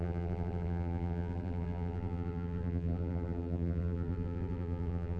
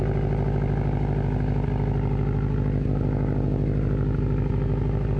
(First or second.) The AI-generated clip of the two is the first